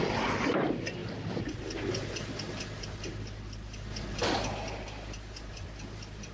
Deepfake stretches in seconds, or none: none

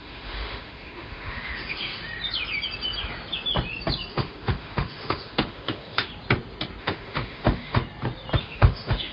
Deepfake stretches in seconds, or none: 0.0-2.0; 4.1-6.1; 6.8-7.8; 8.4-9.1

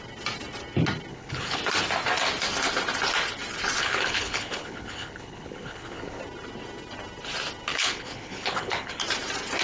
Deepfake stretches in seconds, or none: 1.1-1.6; 3.8-6.2; 7.7-9.0

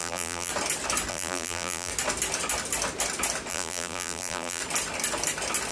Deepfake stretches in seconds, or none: 0.0-0.5; 1.1-1.9; 3.5-4.6

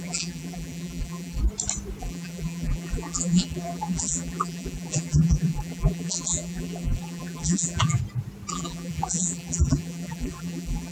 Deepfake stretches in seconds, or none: 0.0-1.4; 2.0-8.0; 8.5-10.9